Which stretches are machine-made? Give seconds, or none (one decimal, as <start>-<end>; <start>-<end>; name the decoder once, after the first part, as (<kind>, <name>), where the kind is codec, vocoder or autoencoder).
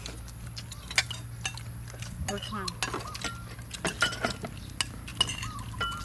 none